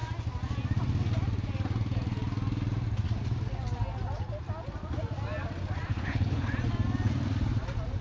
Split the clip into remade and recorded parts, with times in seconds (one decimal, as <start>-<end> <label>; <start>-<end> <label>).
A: 0.0-5.9 recorded; 5.9-6.5 remade; 6.5-8.0 recorded